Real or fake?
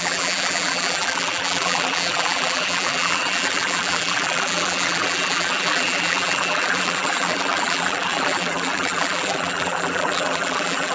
fake